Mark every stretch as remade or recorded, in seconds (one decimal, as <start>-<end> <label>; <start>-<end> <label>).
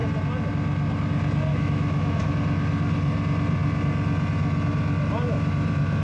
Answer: 0.0-1.5 recorded; 1.5-2.3 remade; 2.3-6.0 recorded